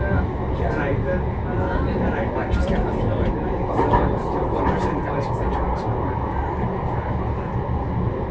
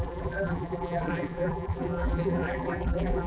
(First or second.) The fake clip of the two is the second